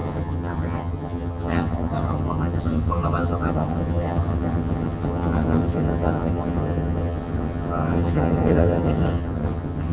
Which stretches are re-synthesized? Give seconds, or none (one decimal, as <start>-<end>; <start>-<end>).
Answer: 0.0-9.9